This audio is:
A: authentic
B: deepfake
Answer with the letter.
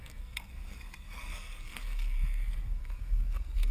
B